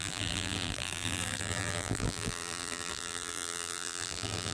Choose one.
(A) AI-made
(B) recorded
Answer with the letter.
A